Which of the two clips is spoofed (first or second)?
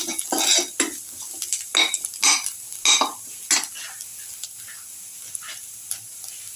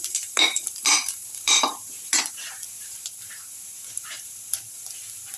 second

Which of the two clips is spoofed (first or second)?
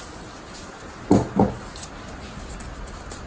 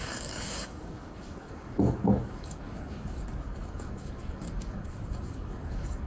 second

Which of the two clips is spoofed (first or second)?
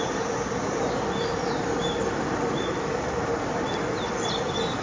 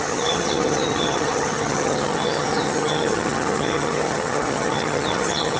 second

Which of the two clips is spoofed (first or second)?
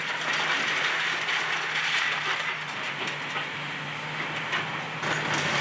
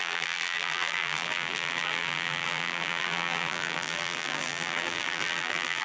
second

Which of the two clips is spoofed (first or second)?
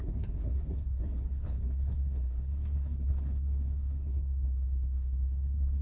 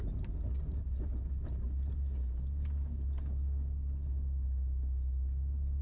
first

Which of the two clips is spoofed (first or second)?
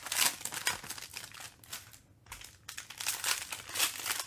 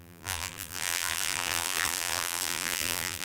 second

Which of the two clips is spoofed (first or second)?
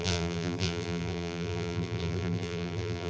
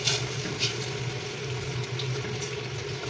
first